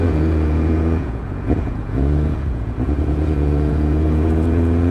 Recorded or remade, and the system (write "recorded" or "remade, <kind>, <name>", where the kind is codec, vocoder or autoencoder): remade, vocoder, Vocos